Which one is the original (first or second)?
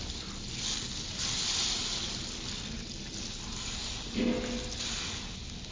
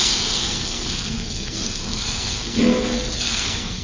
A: first